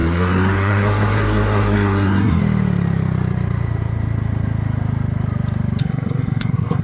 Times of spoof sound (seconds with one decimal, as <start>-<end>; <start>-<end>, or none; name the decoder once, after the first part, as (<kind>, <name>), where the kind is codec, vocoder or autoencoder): 0.0-2.4 (codec, SNAC); 5.8-6.8